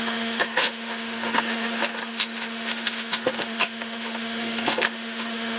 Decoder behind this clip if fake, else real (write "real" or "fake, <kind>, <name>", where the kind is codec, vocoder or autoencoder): fake, autoencoder, DAC-VAE